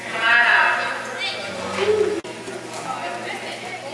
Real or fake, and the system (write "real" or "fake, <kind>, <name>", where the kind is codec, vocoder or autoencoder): real